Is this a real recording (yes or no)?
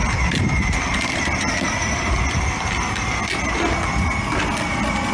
yes